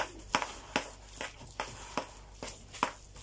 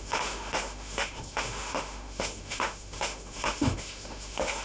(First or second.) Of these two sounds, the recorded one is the first